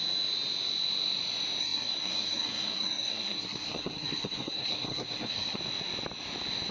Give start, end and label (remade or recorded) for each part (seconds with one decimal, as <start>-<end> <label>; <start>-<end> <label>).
0.0-1.6 recorded; 1.6-5.6 remade; 5.6-6.7 recorded